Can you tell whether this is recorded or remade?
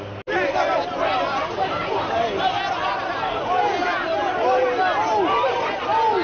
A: recorded